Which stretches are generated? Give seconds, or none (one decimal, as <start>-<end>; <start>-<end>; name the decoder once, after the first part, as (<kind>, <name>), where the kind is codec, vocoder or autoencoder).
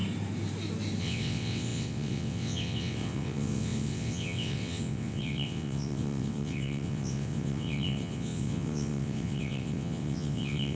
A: 1.0-10.8 (vocoder, WaveNeXt)